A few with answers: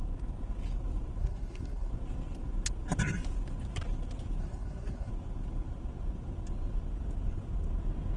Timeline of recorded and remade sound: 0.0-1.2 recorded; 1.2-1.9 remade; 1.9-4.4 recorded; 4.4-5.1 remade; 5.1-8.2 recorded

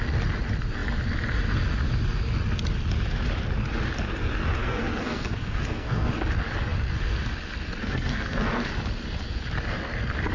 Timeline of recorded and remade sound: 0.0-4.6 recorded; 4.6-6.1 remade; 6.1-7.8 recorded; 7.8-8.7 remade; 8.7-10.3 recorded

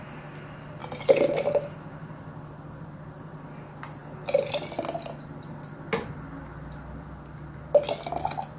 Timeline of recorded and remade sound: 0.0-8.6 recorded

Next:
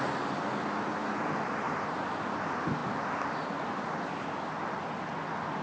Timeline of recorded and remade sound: 0.0-5.6 recorded

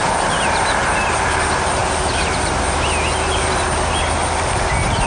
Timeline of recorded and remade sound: 0.0-5.1 recorded